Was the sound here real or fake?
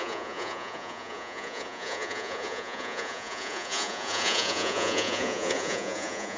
fake